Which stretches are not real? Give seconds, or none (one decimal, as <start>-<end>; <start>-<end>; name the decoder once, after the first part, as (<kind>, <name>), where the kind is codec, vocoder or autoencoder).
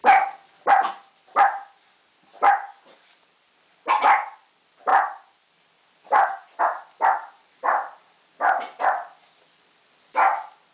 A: none